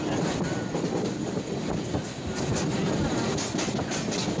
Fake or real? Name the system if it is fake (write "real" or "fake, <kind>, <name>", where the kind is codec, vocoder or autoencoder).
real